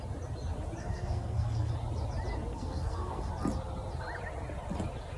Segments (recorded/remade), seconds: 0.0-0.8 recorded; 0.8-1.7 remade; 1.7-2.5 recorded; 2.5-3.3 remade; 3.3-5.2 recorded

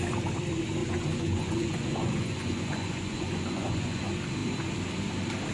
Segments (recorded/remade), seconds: 0.0-0.8 recorded; 0.8-4.0 remade; 4.0-5.5 recorded

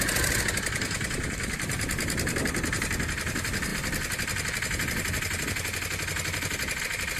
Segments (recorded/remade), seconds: 0.0-7.2 recorded

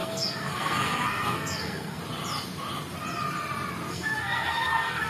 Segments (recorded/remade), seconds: 0.0-2.0 remade; 2.0-3.9 recorded; 3.9-5.1 remade

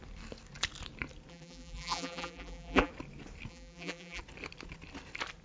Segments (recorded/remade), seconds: 0.0-1.3 recorded; 1.3-2.9 remade; 2.9-3.5 recorded; 3.5-4.2 remade; 4.2-5.4 recorded